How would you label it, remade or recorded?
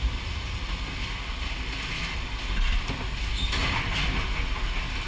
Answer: recorded